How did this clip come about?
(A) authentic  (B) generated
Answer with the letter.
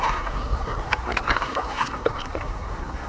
B